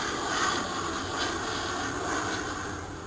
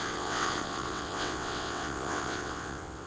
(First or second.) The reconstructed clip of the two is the second